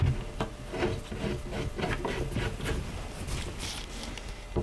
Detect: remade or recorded recorded